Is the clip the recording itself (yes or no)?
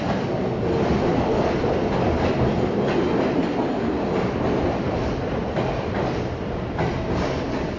no